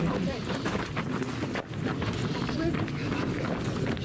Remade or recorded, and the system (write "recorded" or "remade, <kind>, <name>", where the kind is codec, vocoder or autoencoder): recorded